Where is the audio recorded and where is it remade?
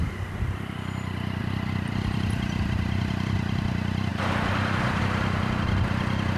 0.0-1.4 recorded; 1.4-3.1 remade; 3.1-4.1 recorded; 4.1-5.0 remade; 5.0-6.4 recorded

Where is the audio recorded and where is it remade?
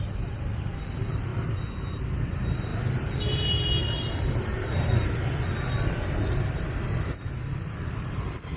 0.0-1.3 remade; 1.3-2.3 recorded; 2.3-2.7 remade; 2.7-7.8 recorded; 7.8-8.6 remade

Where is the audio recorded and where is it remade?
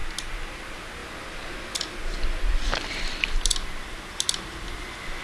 0.0-5.2 recorded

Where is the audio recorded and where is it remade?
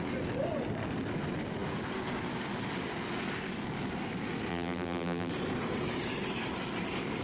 0.0-4.5 recorded; 4.5-5.3 remade; 5.3-7.2 recorded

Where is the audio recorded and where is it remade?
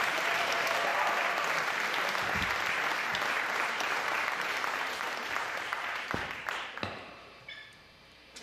0.0-0.9 remade; 0.9-3.5 recorded; 3.5-8.4 remade